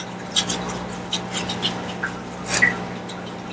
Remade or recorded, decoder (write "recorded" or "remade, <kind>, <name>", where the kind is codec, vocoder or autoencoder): recorded